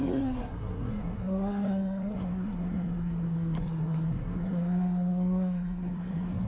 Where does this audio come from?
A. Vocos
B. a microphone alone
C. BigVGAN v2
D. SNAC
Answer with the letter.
D